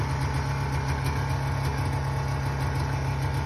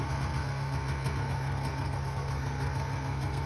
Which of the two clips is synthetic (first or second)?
second